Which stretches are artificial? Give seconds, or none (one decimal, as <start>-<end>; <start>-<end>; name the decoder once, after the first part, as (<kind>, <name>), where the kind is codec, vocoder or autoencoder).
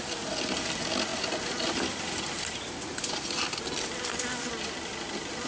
none